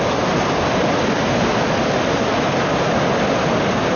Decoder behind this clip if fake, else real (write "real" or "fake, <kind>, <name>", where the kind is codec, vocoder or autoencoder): real